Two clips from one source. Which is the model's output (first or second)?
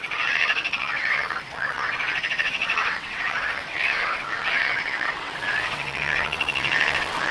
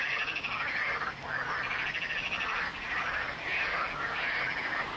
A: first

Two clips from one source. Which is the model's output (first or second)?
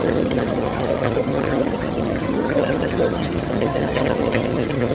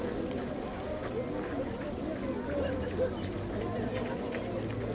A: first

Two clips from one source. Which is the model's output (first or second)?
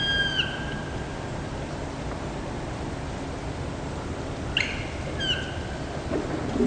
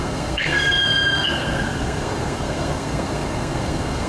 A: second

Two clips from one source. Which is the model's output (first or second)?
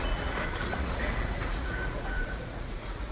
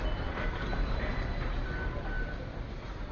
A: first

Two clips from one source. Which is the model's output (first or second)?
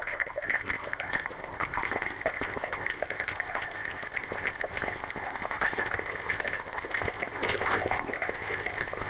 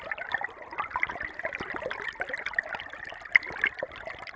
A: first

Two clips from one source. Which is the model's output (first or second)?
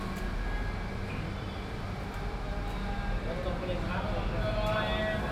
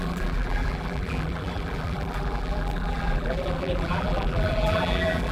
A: second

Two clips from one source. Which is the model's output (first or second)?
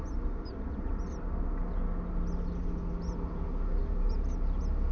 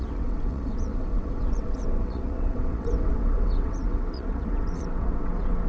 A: second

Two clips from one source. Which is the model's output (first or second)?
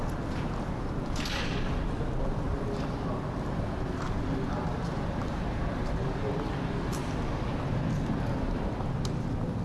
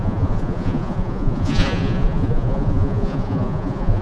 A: second